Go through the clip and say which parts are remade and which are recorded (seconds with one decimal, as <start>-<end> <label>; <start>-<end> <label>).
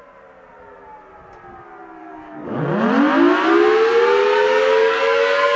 0.0-2.0 recorded; 2.0-2.6 remade; 2.6-4.2 recorded; 4.2-5.6 remade